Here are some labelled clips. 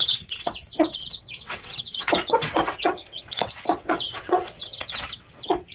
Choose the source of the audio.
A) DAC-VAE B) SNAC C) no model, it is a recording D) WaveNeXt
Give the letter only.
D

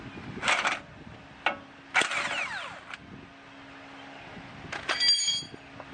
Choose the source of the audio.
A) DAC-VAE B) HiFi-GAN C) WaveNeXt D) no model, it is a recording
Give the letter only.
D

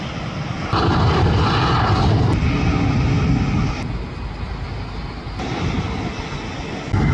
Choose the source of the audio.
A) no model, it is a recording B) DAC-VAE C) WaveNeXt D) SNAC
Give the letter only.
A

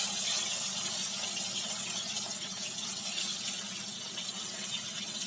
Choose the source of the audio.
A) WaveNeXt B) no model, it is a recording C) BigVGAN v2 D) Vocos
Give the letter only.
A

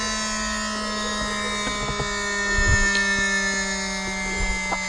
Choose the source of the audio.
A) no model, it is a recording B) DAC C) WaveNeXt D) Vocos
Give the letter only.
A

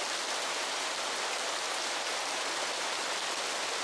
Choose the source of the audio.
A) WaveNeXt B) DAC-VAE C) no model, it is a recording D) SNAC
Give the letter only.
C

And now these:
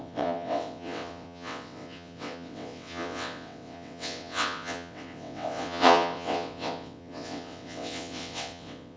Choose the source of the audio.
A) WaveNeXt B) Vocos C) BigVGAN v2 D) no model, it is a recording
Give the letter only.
A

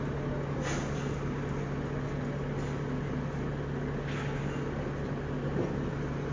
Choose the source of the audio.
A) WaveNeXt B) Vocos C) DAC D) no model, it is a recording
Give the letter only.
D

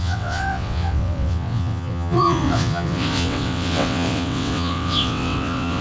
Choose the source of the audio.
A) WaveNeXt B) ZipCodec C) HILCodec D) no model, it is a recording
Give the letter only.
A